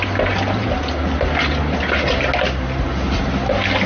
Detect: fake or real real